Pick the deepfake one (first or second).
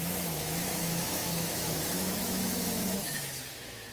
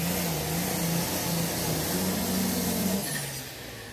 first